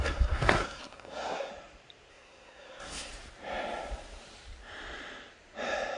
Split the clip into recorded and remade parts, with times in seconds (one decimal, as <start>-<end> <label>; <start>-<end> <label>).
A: 0.0-1.5 remade; 1.5-2.1 recorded; 2.1-3.1 remade; 3.1-6.0 recorded

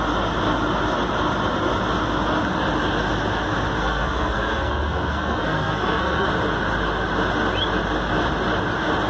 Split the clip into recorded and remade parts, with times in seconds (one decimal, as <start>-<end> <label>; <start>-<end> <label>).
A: 0.0-3.8 recorded; 3.8-6.3 remade; 6.3-9.1 recorded